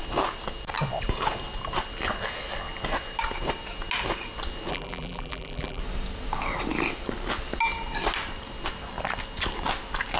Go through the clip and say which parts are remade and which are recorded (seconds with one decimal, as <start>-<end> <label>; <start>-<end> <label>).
0.0-4.7 recorded; 4.7-5.8 remade; 5.8-10.2 recorded